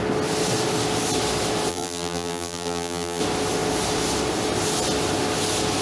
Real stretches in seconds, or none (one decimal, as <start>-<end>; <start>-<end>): 0.0-1.7; 3.2-5.8